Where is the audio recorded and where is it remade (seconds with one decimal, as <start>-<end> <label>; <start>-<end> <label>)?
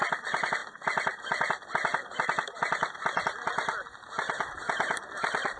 0.0-0.6 remade; 0.6-3.4 recorded; 3.4-5.6 remade